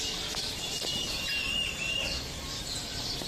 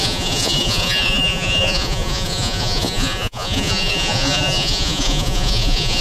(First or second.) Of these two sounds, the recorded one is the first